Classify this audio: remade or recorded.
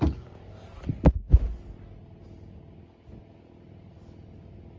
recorded